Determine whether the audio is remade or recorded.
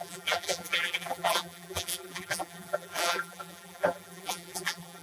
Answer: remade